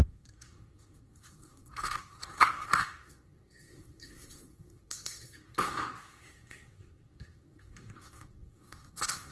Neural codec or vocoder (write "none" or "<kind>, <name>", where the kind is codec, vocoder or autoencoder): codec, SNAC